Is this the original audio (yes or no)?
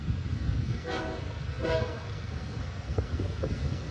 no